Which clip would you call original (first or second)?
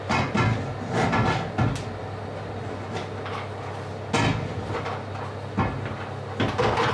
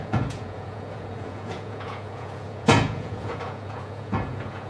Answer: first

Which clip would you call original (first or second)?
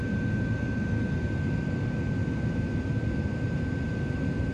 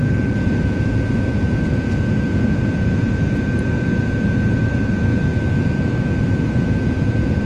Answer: first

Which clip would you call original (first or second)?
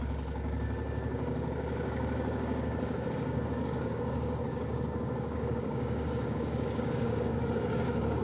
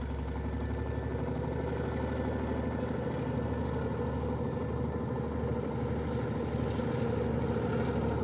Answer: second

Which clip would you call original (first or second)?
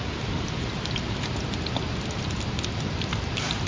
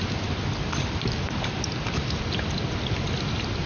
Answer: second